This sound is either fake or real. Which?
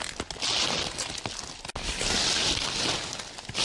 real